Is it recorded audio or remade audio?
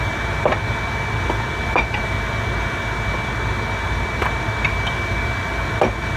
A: recorded